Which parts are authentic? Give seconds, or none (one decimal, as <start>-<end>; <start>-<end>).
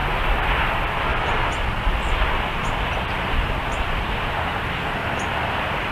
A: 0.0-1.1; 4.6-5.0